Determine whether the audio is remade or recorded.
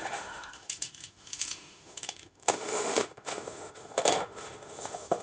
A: remade